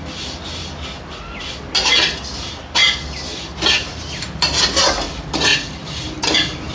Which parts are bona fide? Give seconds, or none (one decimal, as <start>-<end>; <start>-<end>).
0.0-6.7